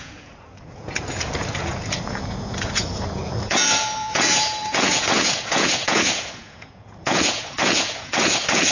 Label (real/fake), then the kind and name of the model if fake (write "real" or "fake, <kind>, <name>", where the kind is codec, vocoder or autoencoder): fake, vocoder, Vocos